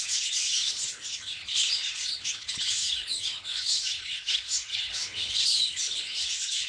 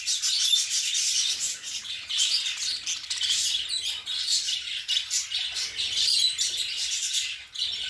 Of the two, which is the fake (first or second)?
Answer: first